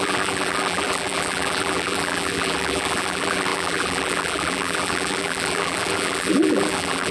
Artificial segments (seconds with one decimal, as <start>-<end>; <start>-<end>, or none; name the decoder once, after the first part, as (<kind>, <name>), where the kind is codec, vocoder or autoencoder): 0.0-7.1 (vocoder, BigVGAN v2)

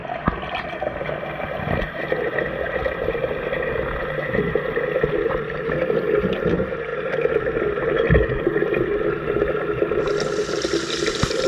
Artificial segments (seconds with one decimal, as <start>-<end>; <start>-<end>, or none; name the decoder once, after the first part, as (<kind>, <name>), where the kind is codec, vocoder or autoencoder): 0.0-3.3 (vocoder, BigVGAN v2)